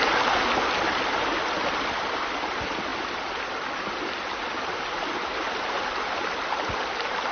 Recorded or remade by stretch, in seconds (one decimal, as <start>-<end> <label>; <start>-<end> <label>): 0.0-7.3 recorded